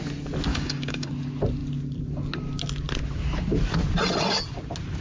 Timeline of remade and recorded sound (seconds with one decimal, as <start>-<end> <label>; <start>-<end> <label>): 0.0-0.5 recorded; 0.5-1.1 remade; 1.1-5.0 recorded

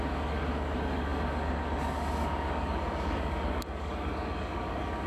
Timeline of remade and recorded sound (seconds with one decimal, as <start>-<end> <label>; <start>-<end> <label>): 0.0-5.1 remade

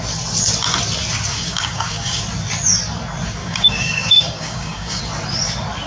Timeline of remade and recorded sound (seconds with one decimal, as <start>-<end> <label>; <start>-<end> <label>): 0.0-1.3 recorded; 1.3-2.2 remade; 2.2-3.4 recorded; 3.4-5.0 remade; 5.0-5.9 recorded

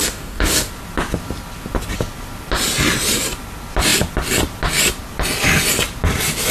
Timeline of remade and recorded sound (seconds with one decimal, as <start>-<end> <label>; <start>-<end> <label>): 0.0-0.7 remade; 0.7-6.5 recorded

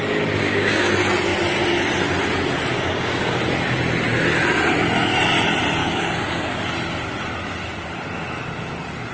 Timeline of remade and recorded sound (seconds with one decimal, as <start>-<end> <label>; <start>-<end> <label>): 0.0-0.4 recorded; 0.4-0.9 remade; 0.9-2.7 recorded; 2.7-3.4 remade; 3.4-5.8 recorded; 5.8-6.6 remade; 6.6-9.1 recorded

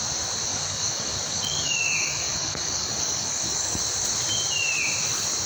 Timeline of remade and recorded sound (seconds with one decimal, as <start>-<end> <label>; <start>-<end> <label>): 0.0-0.5 recorded; 0.5-3.8 remade; 3.8-5.5 recorded